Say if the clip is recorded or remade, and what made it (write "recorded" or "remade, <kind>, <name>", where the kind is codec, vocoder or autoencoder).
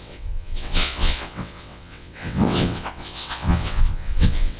remade, vocoder, WaveNeXt